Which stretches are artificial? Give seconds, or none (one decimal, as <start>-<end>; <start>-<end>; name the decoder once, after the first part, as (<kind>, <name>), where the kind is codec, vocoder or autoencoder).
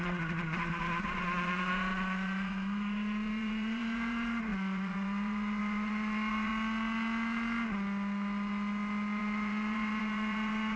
0.0-6.5 (vocoder, Vocos); 9.2-10.8